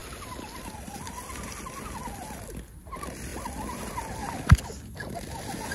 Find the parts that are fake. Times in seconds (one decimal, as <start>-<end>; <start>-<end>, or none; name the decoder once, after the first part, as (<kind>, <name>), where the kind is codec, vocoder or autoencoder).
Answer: none